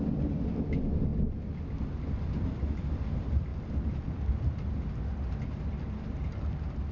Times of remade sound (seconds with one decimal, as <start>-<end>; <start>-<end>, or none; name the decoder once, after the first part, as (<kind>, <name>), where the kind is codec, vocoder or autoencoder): none